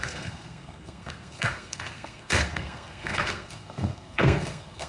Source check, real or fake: fake